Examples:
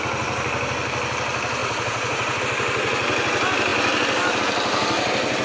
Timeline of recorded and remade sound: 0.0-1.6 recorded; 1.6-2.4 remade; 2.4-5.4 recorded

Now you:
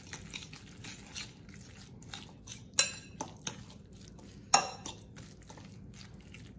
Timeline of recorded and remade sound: 0.0-6.6 recorded

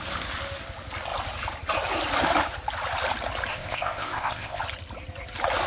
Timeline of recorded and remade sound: 0.0-3.5 recorded; 3.5-4.6 remade; 4.6-5.7 recorded

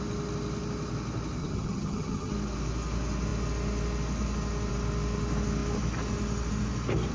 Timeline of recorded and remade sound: 0.0-1.4 recorded; 1.4-2.3 remade; 2.3-7.1 recorded

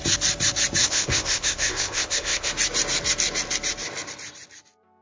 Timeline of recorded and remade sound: 0.0-0.8 recorded; 0.8-2.5 remade; 2.5-5.0 recorded